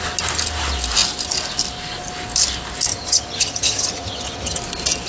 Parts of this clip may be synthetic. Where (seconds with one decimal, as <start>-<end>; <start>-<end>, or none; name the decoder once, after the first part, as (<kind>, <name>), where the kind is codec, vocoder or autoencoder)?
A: 2.9-4.6 (vocoder, HiFi-GAN)